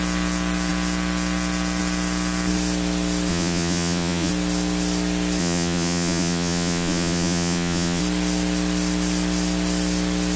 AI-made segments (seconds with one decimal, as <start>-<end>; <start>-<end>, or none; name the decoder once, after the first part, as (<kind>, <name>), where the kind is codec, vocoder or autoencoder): 3.3-4.3 (vocoder, Vocos); 5.4-8.0